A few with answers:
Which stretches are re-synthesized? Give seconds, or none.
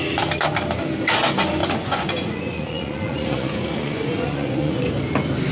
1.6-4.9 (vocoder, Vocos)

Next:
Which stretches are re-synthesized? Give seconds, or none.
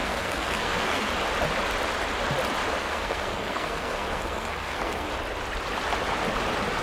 0.0-1.1 (codec, SNAC); 2.8-5.1